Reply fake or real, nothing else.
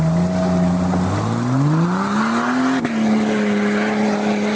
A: real